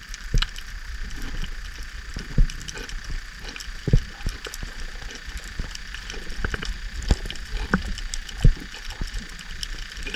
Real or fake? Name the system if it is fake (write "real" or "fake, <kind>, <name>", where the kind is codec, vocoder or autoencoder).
real